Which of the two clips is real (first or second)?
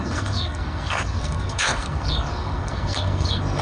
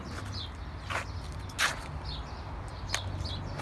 second